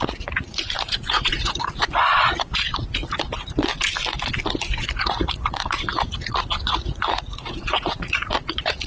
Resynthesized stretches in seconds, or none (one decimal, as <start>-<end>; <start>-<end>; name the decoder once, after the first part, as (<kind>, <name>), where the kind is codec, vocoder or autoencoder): 0.0-3.7 (vocoder, Vocos); 4.7-8.9